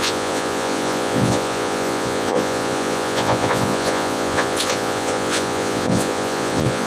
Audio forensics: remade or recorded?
remade